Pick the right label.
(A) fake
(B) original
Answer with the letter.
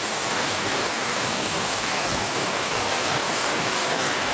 A